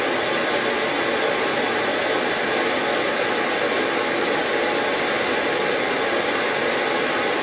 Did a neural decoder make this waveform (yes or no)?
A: no